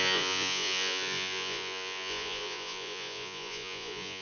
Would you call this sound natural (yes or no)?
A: no